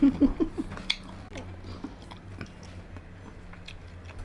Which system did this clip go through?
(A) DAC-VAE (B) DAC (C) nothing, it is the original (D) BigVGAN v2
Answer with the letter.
C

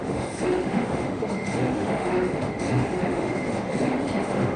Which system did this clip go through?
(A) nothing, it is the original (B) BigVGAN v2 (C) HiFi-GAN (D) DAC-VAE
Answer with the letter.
D